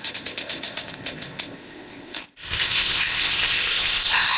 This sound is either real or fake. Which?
fake